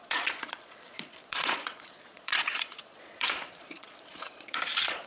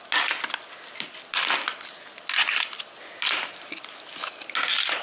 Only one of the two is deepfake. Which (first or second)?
first